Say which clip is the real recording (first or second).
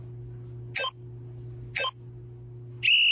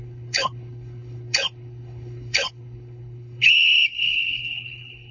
first